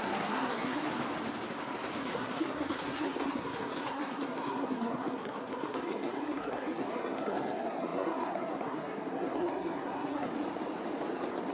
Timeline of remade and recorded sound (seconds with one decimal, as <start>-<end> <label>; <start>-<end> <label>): 0.0-0.9 remade; 0.9-2.0 recorded; 2.0-10.3 remade; 10.3-11.5 recorded